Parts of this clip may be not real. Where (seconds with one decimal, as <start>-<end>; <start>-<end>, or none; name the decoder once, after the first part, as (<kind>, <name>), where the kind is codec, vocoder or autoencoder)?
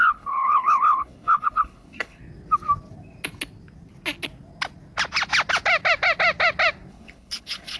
0.0-2.2 (codec, HILCodec); 6.9-7.8